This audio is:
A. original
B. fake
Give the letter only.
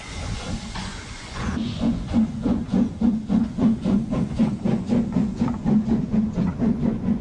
B